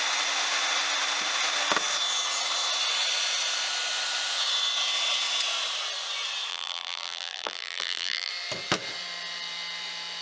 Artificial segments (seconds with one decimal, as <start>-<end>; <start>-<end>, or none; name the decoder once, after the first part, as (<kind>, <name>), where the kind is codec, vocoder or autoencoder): 6.5-8.3 (vocoder, BigVGAN v2)